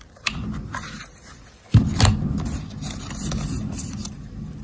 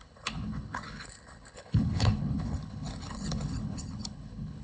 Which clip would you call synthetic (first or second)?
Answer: second